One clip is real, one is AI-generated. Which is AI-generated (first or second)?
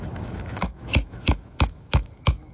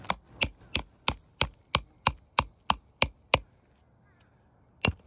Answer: first